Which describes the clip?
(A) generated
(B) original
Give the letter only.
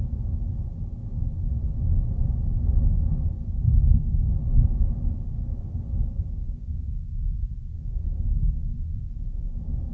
B